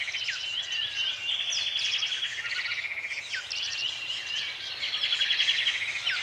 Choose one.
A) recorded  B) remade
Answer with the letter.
A